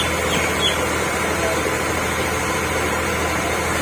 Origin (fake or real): real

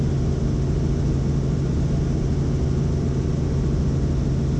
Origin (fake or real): real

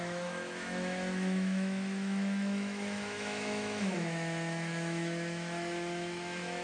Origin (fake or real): fake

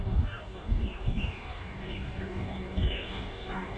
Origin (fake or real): fake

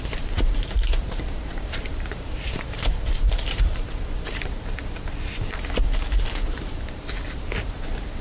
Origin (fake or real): fake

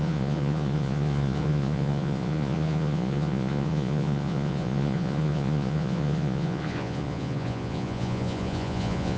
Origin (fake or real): fake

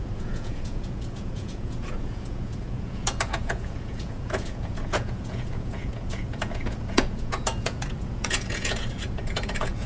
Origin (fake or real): fake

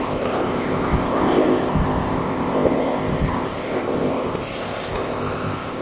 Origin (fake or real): fake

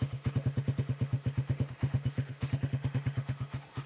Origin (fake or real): fake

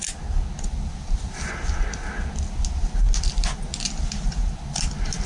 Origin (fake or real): real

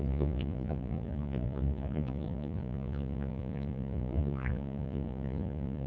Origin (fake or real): fake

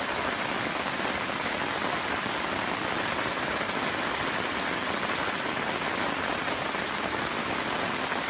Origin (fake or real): real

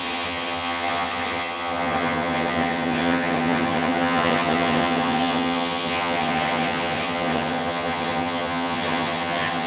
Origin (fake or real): fake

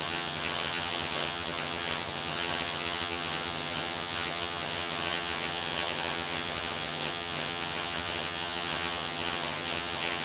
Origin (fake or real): fake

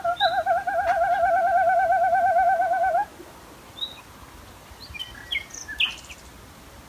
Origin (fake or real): real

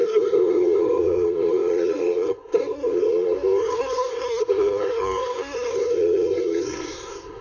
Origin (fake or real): fake